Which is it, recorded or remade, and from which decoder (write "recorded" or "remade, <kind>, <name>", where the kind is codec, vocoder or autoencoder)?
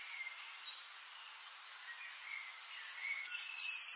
recorded